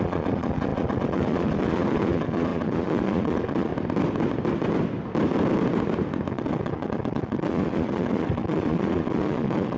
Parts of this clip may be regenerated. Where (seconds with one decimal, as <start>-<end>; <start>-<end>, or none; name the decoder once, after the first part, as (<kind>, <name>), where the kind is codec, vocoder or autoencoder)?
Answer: 0.0-3.7 (vocoder, Vocos); 6.3-9.8